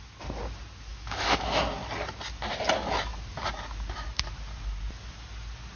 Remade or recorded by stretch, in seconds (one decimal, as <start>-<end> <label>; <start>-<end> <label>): 0.0-0.9 recorded; 0.9-1.6 remade; 1.6-5.8 recorded